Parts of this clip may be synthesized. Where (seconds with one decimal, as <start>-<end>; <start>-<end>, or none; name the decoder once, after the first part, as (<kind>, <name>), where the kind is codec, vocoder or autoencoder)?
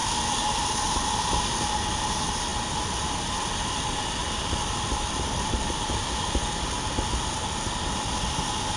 4.2-6.4 (vocoder, BigVGAN v2)